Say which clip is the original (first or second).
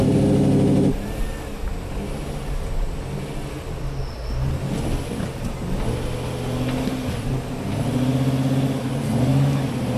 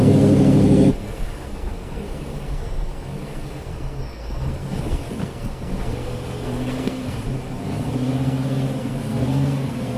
first